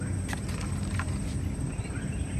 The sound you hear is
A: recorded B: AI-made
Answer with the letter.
A